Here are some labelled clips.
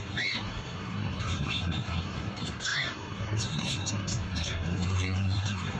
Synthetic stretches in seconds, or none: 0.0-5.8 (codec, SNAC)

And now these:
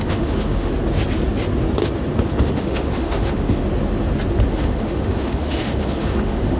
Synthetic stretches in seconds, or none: 0.0-0.7 (autoencoder, DAC-VAE); 2.3-3.6; 4.5-6.6

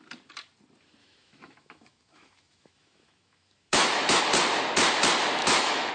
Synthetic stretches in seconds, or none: 1.0-4.2 (autoencoder, DAC-VAE); 5.4-5.9

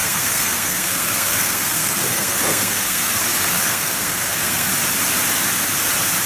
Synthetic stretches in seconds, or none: 0.0-4.7 (codec, SNAC)

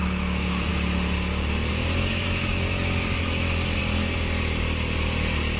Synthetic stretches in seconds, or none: 0.0-0.7 (autoencoder, DAC-VAE); 1.7-3.8

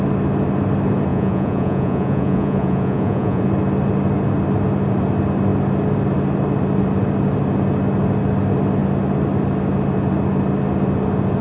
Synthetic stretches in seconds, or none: 1.1-3.4 (vocoder, Vocos)

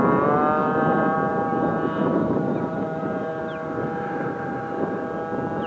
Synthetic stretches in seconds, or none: 0.6-3.4 (vocoder, BigVGAN v2)